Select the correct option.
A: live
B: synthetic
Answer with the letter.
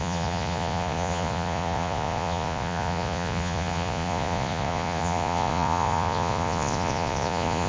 B